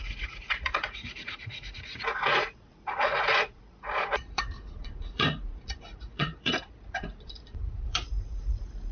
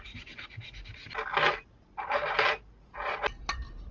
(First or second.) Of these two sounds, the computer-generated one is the first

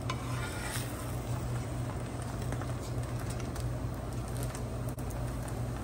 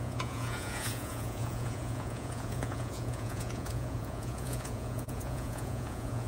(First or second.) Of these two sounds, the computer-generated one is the second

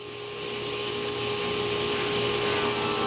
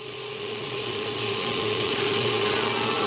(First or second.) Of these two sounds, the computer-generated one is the second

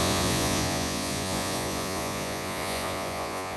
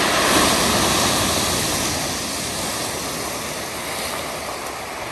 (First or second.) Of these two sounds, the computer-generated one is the first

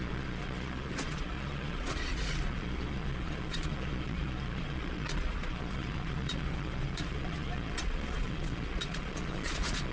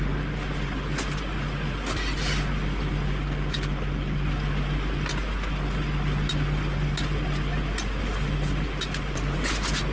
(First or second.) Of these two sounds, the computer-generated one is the first